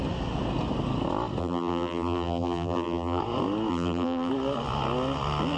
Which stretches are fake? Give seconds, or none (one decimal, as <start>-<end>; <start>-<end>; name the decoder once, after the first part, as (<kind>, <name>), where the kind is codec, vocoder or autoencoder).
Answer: 1.4-3.2 (vocoder, BigVGAN v2); 3.7-4.3